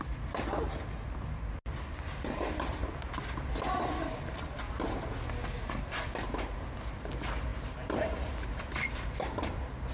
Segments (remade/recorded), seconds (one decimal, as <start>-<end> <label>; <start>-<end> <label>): 0.0-9.9 recorded